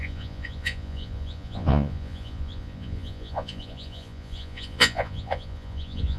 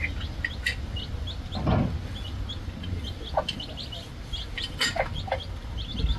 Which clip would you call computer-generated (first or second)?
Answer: first